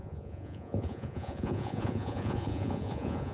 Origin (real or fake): fake